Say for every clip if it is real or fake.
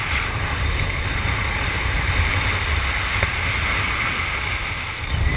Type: fake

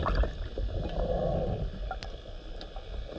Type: real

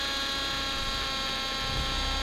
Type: real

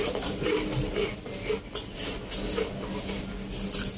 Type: real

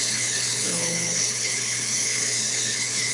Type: fake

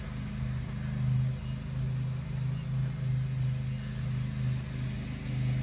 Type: real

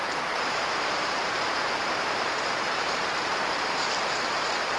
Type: fake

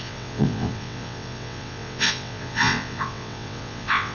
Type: fake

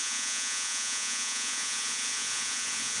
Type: fake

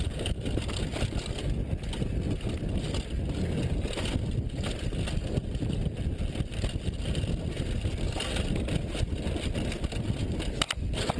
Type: real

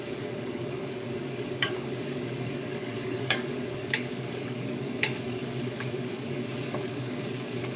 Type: fake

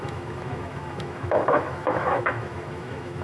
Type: fake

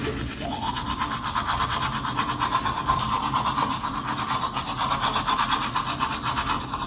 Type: real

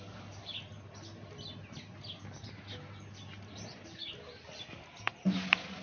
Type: real